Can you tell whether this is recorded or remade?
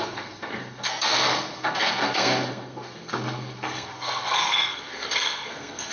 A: remade